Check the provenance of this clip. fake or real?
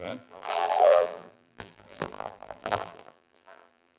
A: fake